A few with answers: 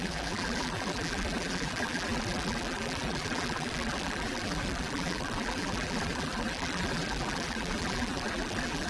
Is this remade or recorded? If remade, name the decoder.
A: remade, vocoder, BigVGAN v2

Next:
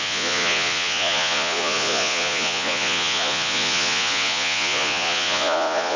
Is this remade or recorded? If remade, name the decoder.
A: remade, vocoder, Vocos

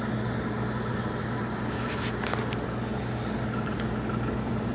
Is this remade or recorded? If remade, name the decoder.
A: recorded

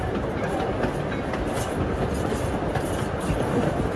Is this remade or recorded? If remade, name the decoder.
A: recorded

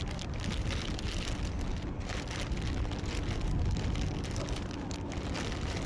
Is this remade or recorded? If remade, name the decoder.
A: recorded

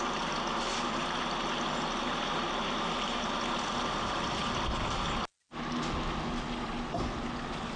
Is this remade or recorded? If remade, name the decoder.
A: recorded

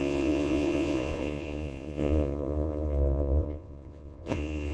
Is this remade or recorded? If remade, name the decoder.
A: remade, vocoder, Vocos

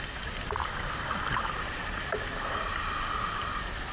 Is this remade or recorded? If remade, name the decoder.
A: recorded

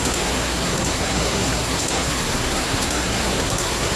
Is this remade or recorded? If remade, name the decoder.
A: remade, codec, SNAC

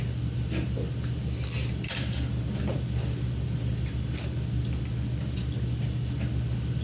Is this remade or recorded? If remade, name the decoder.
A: recorded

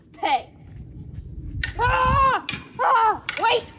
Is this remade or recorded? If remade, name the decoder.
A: recorded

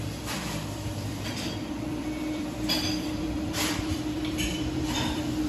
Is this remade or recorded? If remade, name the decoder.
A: remade, vocoder, BigVGAN v2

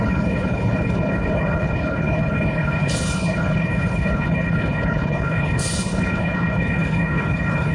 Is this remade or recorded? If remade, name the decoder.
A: remade, codec, HILCodec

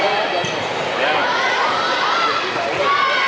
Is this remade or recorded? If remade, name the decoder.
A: recorded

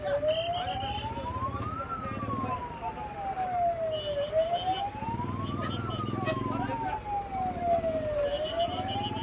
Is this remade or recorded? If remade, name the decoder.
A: recorded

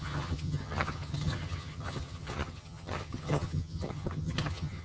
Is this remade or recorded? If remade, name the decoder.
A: remade, vocoder, HiFi-GAN